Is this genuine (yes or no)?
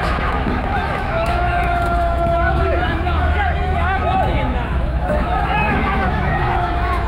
no